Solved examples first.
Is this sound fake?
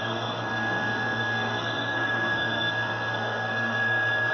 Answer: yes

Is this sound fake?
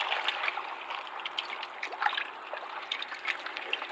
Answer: no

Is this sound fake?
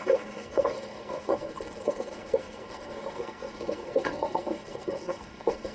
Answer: yes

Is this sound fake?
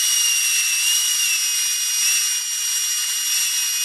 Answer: no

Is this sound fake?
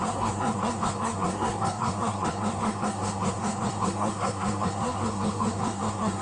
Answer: yes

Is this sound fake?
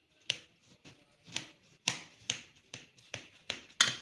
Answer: no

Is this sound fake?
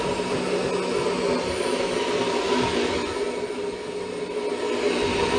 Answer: no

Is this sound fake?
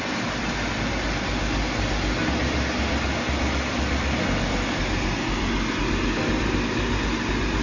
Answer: no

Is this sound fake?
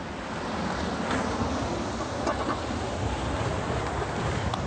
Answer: no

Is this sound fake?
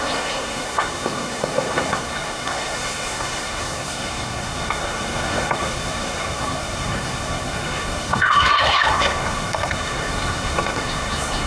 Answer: yes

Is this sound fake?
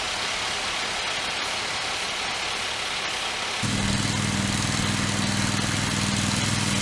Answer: no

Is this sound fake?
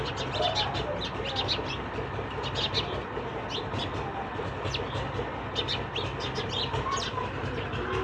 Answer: no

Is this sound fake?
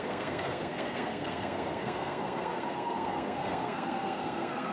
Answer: yes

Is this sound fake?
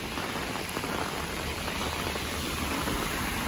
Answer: no